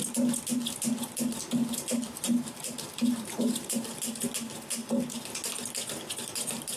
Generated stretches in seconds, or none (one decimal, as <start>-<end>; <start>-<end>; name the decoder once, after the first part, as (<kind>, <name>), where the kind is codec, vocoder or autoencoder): 1.6-4.0 (vocoder, BigVGAN v2)